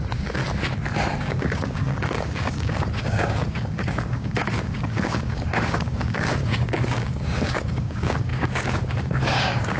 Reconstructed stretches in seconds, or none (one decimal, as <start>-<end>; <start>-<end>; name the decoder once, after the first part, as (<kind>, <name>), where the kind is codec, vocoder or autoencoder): 0.0-0.4 (codec, DAC); 1.2-9.8